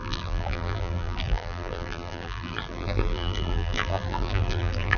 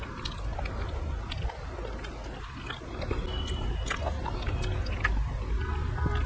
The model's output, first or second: first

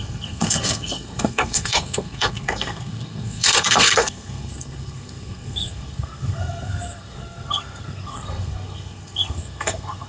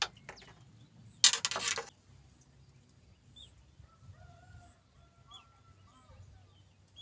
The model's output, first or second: first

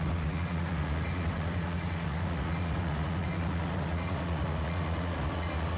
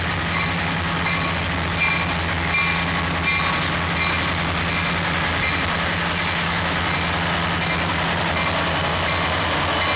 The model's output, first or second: first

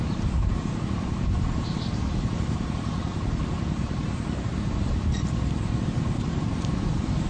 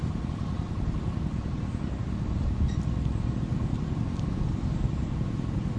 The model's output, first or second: first